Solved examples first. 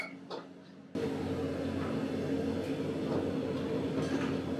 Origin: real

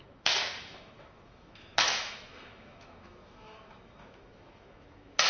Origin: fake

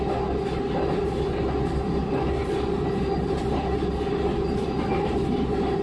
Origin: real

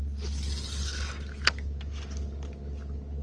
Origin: real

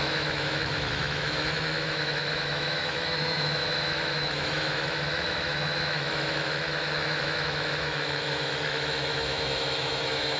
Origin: fake